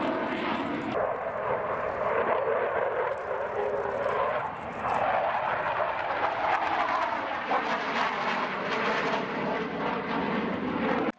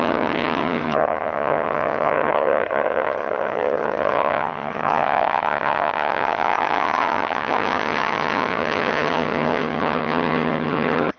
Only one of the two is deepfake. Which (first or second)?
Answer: second